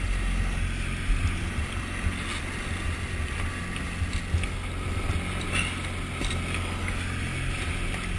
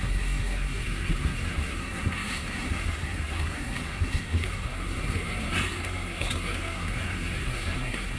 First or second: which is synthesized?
second